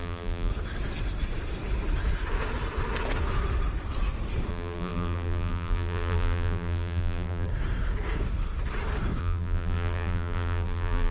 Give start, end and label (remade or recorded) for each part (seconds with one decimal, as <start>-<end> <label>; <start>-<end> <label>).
0.0-0.5 remade; 0.5-4.5 recorded; 4.5-7.5 remade; 7.5-9.2 recorded; 9.2-11.1 remade